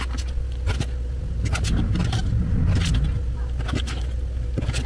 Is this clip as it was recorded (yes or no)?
yes